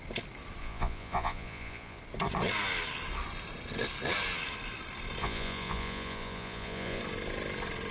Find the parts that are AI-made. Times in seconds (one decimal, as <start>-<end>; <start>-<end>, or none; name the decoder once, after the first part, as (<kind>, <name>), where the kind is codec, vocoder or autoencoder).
0.6-2.0 (vocoder, Vocos); 5.2-7.0